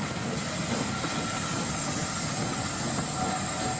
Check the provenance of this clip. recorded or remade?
recorded